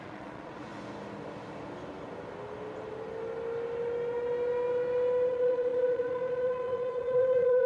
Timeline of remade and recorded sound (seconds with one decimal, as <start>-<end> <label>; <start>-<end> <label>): 0.0-0.7 remade; 0.7-5.3 recorded; 5.3-7.7 remade